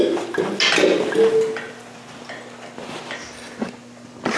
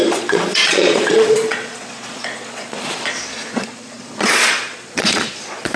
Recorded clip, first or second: first